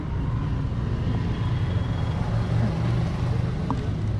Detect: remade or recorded recorded